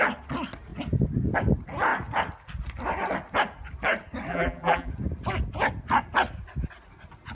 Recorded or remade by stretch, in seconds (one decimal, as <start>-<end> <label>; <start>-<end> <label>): 0.0-4.3 recorded; 4.3-4.9 remade; 4.9-7.3 recorded